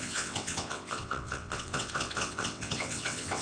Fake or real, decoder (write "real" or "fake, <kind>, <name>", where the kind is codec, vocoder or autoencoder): fake, vocoder, WaveNeXt